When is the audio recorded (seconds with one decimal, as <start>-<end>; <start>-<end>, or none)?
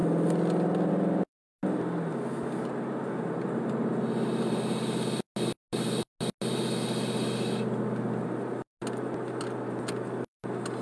0.0-10.8